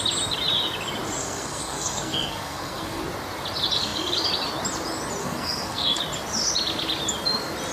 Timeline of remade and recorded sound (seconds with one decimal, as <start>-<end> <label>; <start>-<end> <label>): 0.0-1.2 recorded; 1.2-3.0 remade; 3.0-5.2 recorded; 5.2-6.0 remade; 6.0-7.7 recorded